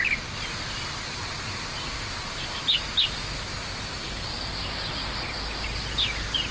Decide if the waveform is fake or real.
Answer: real